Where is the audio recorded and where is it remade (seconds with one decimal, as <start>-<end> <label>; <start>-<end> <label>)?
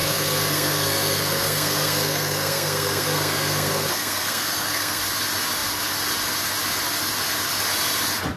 0.0-5.0 remade; 5.0-8.4 recorded